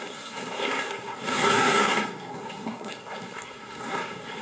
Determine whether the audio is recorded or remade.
remade